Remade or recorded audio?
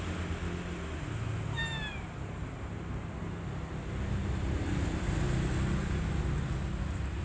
recorded